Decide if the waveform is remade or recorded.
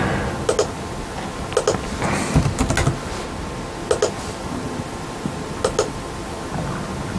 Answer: recorded